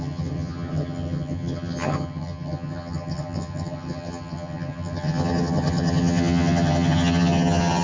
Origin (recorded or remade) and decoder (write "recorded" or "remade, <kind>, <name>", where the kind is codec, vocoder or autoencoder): remade, vocoder, HiFi-GAN